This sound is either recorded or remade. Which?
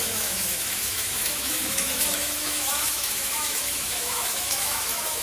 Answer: remade